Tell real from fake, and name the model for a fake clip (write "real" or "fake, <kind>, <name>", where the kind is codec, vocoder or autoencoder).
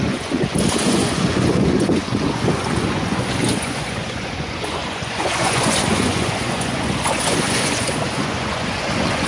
fake, vocoder, Vocos